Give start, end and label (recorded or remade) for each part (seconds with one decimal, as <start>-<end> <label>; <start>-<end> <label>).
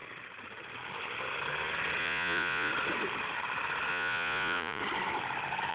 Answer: 0.0-2.0 recorded; 2.0-2.7 remade; 2.7-3.9 recorded; 3.9-4.8 remade; 4.8-5.7 recorded